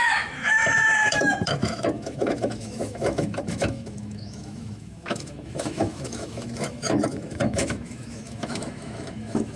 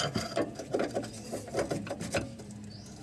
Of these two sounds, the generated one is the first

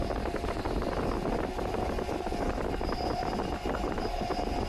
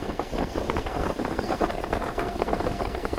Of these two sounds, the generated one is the second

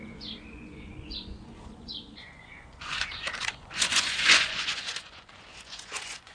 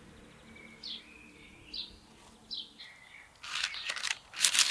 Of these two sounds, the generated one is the first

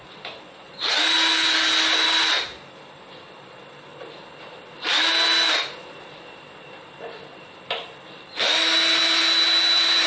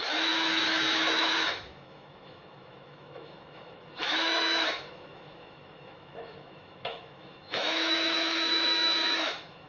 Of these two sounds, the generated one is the second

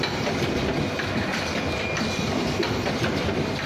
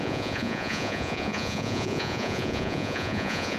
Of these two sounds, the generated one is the second